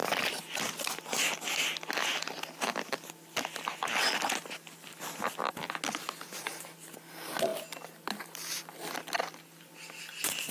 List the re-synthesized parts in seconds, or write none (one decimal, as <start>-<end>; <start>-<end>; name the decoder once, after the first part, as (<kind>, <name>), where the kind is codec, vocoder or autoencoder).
none

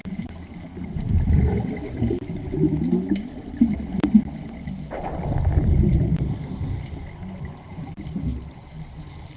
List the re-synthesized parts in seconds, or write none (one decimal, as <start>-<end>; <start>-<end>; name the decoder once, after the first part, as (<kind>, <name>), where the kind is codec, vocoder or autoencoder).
3.3-4.2 (vocoder, BigVGAN v2); 6.1-7.4; 8.3-9.0

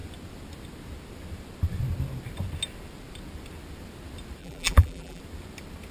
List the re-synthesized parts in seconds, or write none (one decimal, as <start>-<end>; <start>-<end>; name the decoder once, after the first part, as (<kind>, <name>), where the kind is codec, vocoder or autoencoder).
4.4-5.2 (vocoder, BigVGAN v2)